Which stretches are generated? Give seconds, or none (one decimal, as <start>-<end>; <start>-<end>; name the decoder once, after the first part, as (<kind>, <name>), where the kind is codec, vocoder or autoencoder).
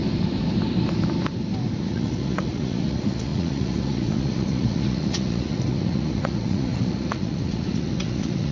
1.8-8.5 (vocoder, Vocos)